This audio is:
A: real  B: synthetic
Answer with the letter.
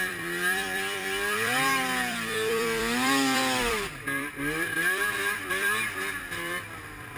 B